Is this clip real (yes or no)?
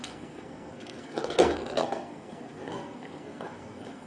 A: no